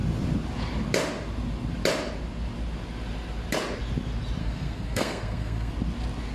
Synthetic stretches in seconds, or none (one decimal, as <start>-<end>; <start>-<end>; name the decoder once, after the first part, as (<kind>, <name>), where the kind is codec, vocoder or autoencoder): 4.4-5.7 (codec, SNAC)